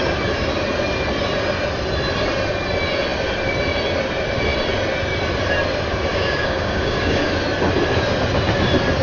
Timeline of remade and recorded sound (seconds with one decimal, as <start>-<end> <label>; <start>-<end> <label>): 0.0-6.1 recorded; 6.1-7.3 remade; 7.3-9.0 recorded